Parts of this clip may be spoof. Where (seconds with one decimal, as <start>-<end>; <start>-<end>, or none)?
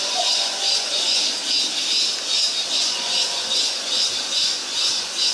0.0-1.4; 2.7-5.3